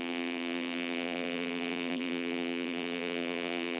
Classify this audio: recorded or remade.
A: remade